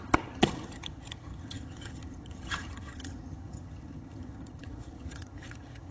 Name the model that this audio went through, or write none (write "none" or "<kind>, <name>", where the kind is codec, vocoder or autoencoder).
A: vocoder, HiFi-GAN